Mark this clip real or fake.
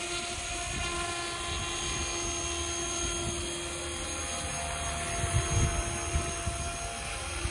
real